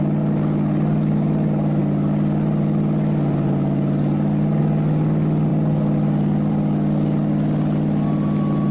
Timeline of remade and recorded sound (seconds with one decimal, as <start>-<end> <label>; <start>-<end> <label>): 0.0-8.7 recorded